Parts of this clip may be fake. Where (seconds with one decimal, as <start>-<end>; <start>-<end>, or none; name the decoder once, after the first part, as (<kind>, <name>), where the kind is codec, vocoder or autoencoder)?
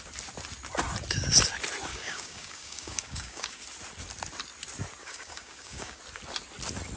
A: 1.9-3.6 (codec, DAC); 5.0-6.0